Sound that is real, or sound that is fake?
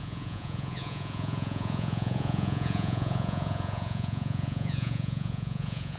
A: fake